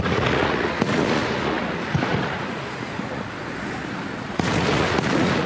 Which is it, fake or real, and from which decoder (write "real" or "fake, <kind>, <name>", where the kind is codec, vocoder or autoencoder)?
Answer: fake, vocoder, Vocos